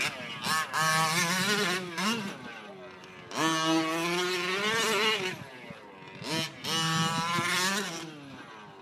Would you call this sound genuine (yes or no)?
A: yes